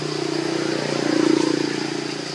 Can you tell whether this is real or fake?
real